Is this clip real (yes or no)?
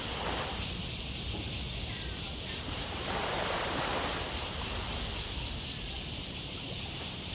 yes